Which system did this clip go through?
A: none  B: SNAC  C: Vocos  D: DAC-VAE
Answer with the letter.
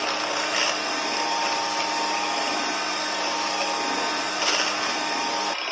A